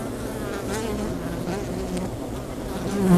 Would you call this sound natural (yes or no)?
yes